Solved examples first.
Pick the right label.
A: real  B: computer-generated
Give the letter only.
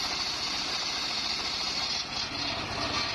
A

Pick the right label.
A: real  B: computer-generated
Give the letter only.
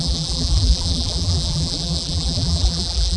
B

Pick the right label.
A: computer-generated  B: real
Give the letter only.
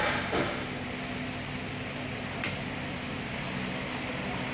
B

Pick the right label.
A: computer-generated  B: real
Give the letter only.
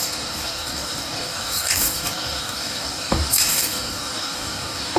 A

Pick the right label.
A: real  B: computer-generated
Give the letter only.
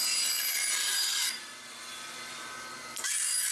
A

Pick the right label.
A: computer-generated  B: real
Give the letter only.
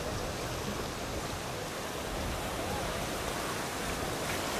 B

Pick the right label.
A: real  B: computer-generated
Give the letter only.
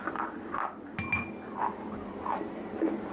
A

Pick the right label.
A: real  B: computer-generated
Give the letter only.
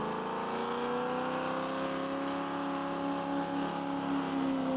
A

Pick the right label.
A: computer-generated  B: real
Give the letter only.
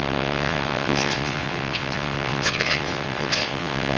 A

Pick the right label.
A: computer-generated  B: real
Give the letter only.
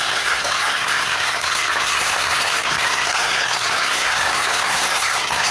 A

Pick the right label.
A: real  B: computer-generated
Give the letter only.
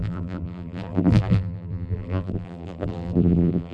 B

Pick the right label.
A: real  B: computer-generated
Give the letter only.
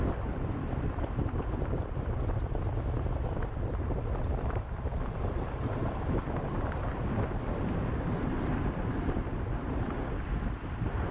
B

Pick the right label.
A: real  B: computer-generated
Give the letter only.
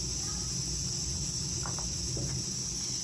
A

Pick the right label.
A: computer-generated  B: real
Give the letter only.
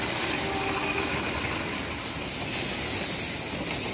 B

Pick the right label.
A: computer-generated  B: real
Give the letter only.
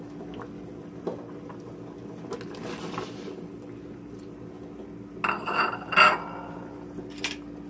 B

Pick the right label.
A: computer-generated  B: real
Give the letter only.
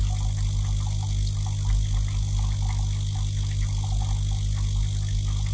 B